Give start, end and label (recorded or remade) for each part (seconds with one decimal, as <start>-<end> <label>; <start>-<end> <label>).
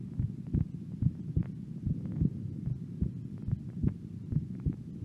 0.0-3.8 recorded; 3.8-4.4 remade; 4.4-5.0 recorded